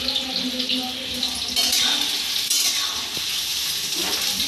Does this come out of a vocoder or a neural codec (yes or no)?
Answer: no